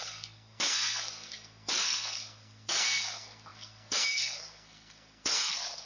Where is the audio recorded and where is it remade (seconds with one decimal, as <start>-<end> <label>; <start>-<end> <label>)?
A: 0.0-5.9 remade